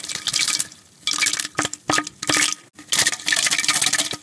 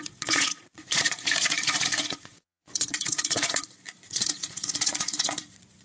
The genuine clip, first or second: first